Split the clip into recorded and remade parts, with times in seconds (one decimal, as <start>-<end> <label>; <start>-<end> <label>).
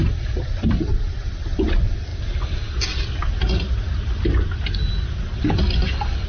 0.0-6.3 recorded